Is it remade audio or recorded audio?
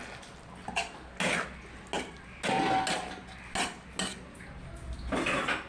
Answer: recorded